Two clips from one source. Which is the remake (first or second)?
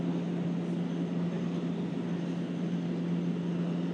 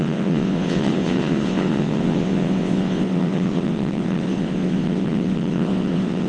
second